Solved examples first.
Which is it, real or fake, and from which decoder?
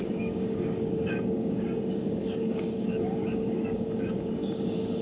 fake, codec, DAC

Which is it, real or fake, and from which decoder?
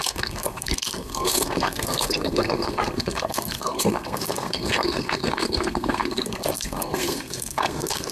fake, codec, SNAC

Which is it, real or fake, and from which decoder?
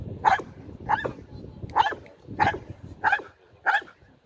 real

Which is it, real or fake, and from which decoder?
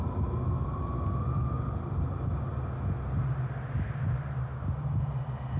real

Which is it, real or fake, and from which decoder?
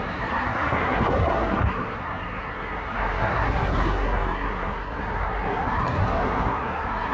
fake, codec, SNAC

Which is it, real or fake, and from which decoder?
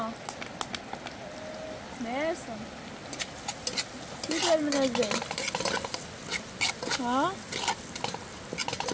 real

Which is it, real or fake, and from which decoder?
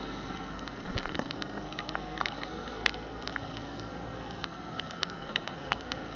fake, codec, SNAC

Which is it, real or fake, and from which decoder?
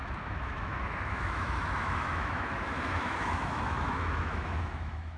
fake, autoencoder, DAC-VAE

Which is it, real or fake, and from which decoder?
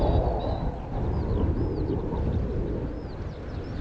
real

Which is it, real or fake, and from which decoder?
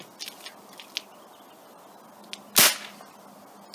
real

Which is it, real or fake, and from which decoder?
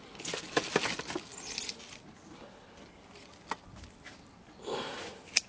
real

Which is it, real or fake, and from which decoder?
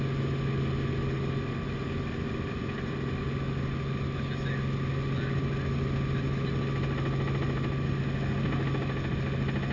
real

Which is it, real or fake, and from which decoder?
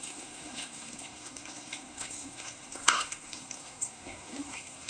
fake, codec, SNAC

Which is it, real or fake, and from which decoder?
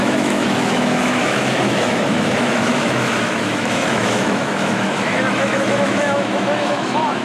fake, autoencoder, DAC-VAE